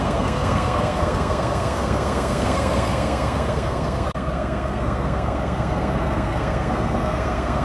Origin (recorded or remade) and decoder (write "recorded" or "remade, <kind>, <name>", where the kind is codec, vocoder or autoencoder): remade, codec, SNAC